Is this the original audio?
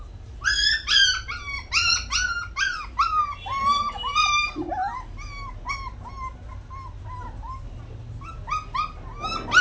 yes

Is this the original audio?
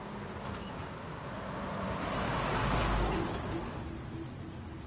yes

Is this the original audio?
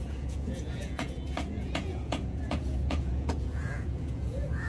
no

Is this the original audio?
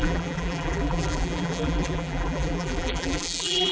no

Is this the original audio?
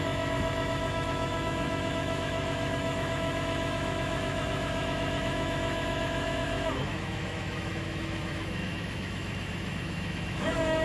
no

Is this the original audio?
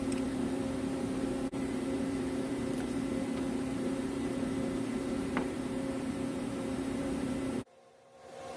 no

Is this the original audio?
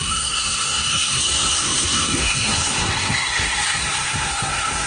no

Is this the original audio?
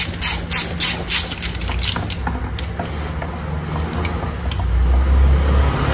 yes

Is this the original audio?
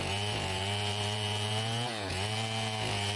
no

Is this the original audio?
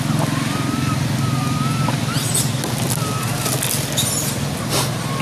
yes